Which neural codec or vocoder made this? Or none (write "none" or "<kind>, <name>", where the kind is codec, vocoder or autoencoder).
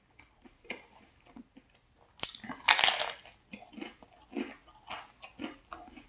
none